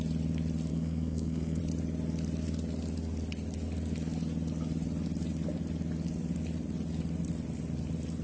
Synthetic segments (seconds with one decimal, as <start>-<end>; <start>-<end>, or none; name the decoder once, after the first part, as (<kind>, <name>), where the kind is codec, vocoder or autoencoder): 0.7-1.6 (codec, SNAC)